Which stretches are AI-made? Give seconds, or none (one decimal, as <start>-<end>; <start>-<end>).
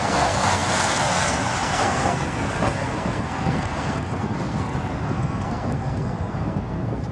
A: 0.0-7.1